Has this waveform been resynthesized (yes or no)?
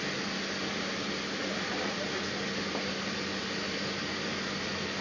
no